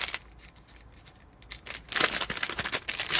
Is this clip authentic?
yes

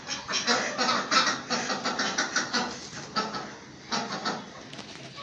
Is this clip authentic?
yes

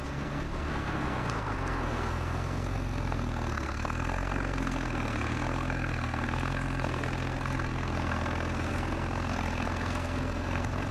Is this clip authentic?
no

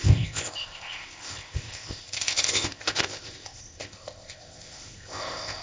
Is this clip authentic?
no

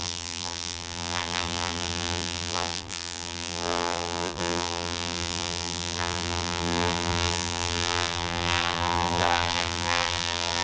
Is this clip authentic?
no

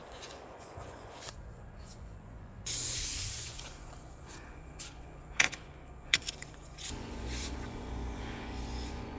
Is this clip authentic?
no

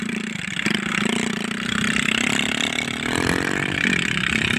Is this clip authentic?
no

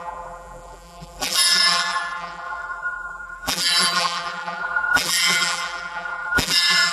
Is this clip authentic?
no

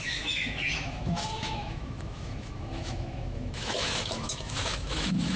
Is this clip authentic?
no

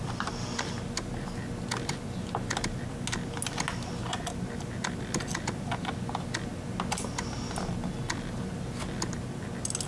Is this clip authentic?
yes